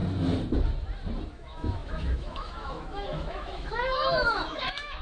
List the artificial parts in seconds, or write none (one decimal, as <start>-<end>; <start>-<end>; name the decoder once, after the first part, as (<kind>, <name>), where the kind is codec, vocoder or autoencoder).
1.3-5.0 (autoencoder, DAC-VAE)